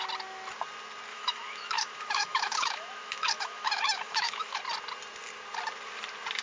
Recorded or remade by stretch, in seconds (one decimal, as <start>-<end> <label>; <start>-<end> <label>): 0.0-1.1 recorded; 1.1-4.6 remade; 4.6-6.4 recorded